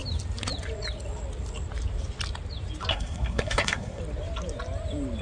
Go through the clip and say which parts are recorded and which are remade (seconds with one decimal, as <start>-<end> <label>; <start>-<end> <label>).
0.0-2.9 recorded; 2.9-4.0 remade; 4.0-5.2 recorded